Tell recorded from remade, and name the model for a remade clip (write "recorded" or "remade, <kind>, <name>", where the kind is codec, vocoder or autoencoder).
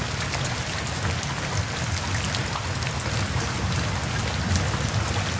recorded